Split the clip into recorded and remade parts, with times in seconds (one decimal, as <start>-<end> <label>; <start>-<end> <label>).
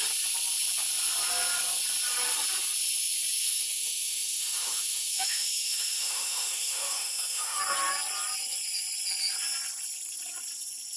0.0-3.4 recorded; 3.4-7.6 remade; 7.6-11.0 recorded